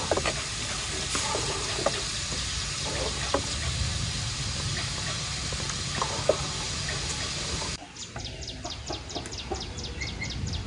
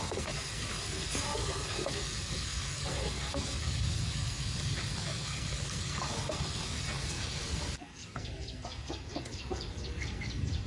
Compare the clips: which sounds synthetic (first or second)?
second